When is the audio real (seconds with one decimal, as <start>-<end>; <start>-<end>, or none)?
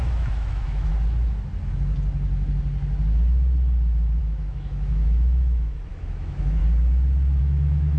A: 0.9-4.2; 6.6-7.4